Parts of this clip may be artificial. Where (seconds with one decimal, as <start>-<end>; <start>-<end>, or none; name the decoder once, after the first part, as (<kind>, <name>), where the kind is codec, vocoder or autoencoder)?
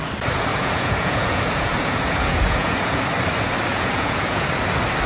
0.5-3.0 (vocoder, Vocos); 3.7-4.5